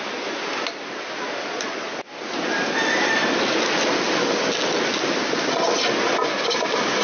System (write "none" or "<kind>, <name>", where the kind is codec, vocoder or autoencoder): none